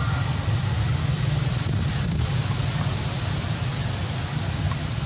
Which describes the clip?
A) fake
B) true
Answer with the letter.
B